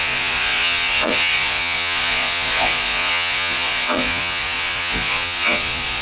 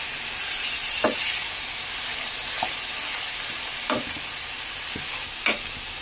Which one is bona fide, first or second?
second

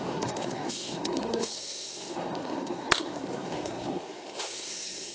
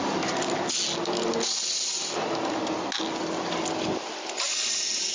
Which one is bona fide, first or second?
second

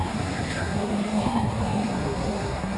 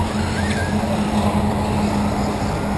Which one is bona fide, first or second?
second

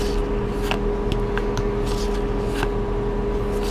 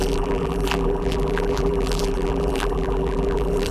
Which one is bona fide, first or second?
first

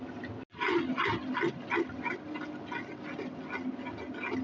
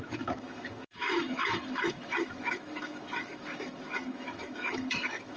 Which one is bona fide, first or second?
first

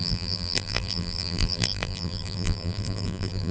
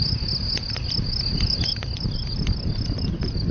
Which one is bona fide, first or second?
second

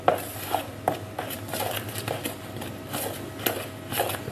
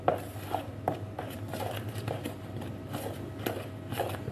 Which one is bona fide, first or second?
first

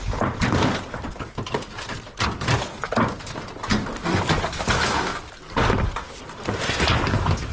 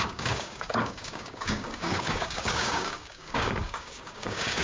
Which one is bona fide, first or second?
first